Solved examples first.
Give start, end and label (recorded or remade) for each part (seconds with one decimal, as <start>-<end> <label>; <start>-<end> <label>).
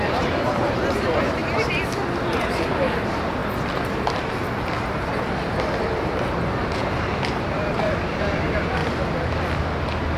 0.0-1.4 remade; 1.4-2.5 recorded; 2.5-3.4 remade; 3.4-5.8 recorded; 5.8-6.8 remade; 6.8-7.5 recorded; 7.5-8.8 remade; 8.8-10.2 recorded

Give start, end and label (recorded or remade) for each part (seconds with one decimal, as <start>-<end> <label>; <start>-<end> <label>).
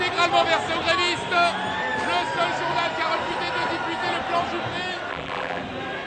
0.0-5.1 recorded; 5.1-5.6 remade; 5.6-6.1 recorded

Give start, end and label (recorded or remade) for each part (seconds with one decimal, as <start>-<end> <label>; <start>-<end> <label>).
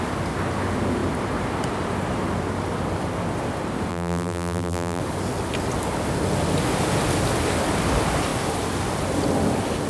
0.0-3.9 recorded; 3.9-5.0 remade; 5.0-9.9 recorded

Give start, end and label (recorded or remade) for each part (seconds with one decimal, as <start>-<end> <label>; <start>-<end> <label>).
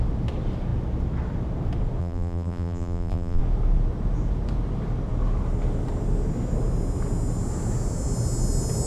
0.0-2.0 recorded; 2.0-3.4 remade; 3.4-8.9 recorded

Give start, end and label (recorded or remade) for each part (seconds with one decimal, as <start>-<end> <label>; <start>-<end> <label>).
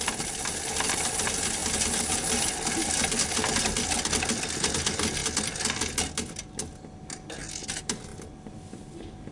0.0-8.1 recorded; 8.1-9.3 remade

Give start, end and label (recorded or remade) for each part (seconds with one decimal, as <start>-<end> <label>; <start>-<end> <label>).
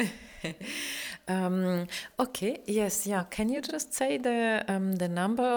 0.0-0.5 remade; 0.5-3.2 recorded; 3.2-3.7 remade; 3.7-4.7 recorded; 4.7-5.6 remade